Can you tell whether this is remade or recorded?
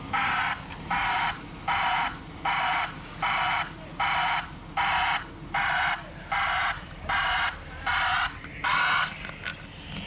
recorded